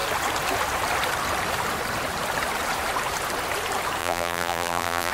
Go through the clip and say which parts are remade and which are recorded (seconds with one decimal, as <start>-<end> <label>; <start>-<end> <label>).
0.0-4.0 recorded; 4.0-5.1 remade